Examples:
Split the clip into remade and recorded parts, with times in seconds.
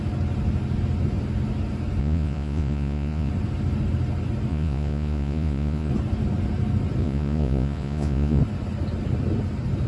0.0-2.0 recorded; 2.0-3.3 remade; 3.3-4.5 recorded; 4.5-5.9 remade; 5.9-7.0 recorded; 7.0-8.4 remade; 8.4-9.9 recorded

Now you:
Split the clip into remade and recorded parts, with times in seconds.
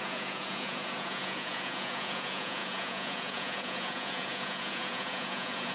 0.0-5.7 remade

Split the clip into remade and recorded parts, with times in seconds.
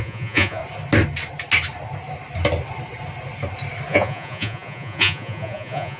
0.0-0.6 remade; 0.6-3.9 recorded; 3.9-6.0 remade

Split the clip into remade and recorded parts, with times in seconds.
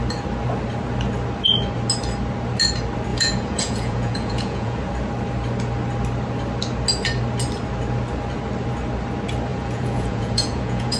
0.0-3.1 recorded; 3.1-4.8 remade; 4.8-9.5 recorded; 9.5-11.0 remade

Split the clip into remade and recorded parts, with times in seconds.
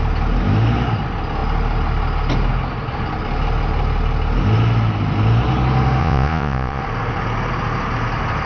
0.0-6.0 recorded; 6.0-6.8 remade; 6.8-8.5 recorded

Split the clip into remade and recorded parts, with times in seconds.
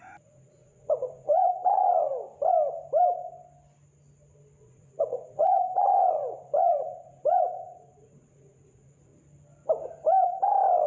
0.0-2.1 remade; 2.1-4.6 recorded; 4.6-9.1 remade; 9.1-10.9 recorded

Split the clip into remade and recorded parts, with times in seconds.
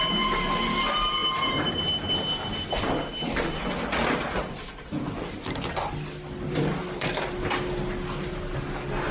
0.0-9.1 recorded